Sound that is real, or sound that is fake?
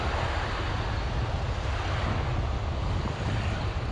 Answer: real